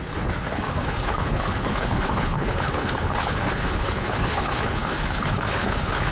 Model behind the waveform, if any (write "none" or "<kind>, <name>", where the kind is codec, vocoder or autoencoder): codec, HILCodec